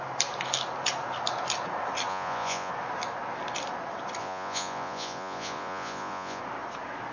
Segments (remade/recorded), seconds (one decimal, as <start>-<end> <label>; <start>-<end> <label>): 0.0-2.1 recorded; 2.1-2.7 remade; 2.7-4.2 recorded; 4.2-6.4 remade; 6.4-7.1 recorded

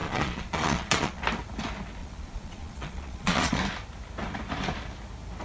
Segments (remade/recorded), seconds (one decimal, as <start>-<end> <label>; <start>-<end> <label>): 0.0-1.2 remade; 1.2-2.0 recorded; 2.0-3.6 remade; 3.6-5.4 recorded

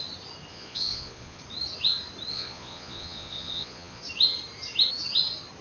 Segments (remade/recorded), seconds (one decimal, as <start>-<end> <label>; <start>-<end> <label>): 0.0-0.5 recorded; 0.5-1.4 remade; 1.4-2.3 recorded; 2.3-4.0 remade; 4.0-5.6 recorded